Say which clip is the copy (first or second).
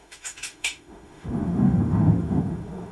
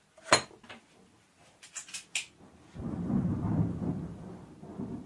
first